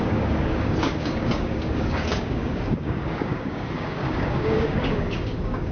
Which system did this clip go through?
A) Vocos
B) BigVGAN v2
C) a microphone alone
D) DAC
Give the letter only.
D